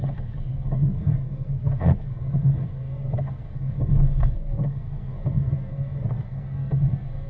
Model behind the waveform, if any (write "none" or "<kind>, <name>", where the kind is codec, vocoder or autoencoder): codec, SNAC